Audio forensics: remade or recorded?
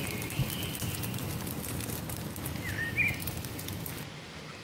recorded